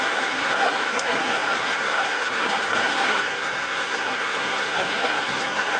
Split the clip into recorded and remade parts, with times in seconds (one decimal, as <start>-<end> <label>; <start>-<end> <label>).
0.0-5.8 remade